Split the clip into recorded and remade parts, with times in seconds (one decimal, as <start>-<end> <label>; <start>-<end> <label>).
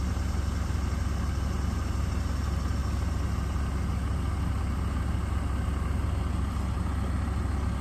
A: 0.0-7.8 recorded